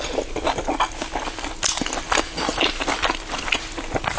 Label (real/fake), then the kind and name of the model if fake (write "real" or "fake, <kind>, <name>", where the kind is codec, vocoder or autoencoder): real